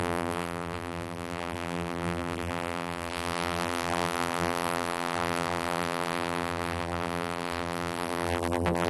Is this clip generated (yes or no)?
yes